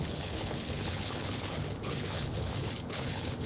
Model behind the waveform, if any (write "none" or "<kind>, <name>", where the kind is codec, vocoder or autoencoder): codec, HILCodec